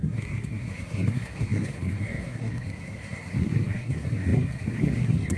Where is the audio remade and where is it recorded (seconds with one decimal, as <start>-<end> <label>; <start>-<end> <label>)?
0.0-5.4 remade